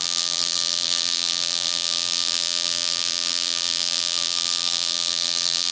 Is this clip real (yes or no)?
no